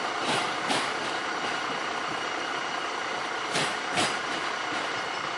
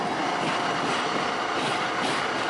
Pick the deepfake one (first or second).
first